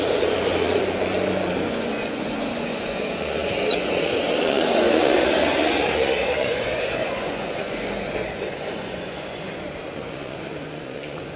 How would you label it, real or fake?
fake